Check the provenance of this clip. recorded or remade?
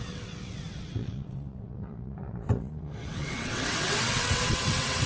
remade